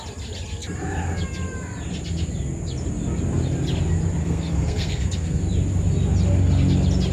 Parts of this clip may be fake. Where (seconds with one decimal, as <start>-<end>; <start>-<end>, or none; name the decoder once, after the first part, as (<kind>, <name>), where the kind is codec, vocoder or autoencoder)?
4.2-5.4 (codec, SNAC)